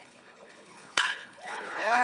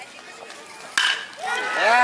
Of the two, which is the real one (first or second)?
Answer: second